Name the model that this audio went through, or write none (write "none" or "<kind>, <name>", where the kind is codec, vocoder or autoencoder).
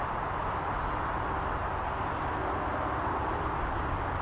none